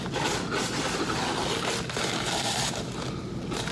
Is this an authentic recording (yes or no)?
yes